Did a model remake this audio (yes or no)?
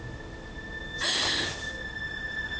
no